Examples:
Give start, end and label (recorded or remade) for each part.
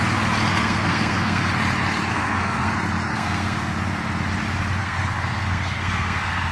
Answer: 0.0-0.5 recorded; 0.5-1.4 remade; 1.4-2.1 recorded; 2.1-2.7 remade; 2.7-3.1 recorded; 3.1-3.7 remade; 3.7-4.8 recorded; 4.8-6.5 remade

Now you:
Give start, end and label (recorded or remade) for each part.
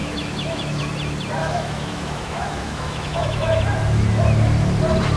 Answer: 0.0-0.8 remade; 0.8-1.4 recorded; 1.4-3.6 remade; 3.6-5.2 recorded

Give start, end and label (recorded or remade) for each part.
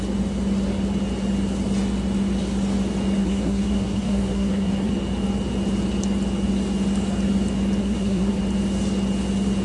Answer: 0.0-3.2 recorded; 3.2-4.9 remade; 4.9-7.8 recorded; 7.8-8.4 remade; 8.4-9.6 recorded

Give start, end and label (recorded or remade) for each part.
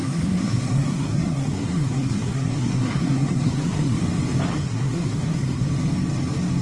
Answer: 0.0-4.0 remade; 4.0-4.6 recorded; 4.6-5.6 remade; 5.6-6.6 recorded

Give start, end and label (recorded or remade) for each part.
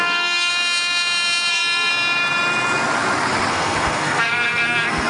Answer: 0.0-0.5 remade; 0.5-1.5 recorded; 1.5-1.9 remade; 1.9-3.5 recorded; 3.5-5.1 remade